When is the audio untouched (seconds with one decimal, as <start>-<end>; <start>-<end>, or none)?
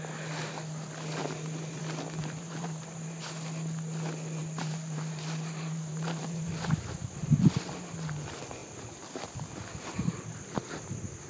0.0-1.2; 1.8-2.2; 3.2-4.4; 7.2-11.3